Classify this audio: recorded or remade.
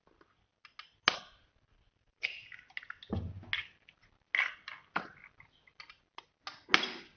recorded